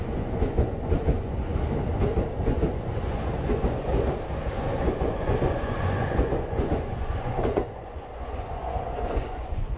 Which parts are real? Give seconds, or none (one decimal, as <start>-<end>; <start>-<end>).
1.5-2.2; 3.9-4.5